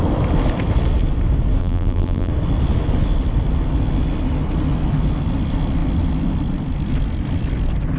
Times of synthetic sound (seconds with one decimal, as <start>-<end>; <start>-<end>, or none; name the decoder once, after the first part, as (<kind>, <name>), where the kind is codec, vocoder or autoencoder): 1.6-2.3 (vocoder, BigVGAN v2)